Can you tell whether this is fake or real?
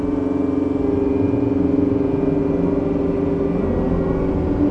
real